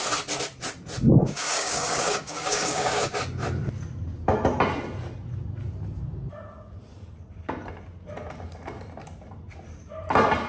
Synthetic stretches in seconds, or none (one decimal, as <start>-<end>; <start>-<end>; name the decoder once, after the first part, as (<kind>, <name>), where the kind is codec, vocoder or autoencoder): 1.1-3.1 (codec, DAC)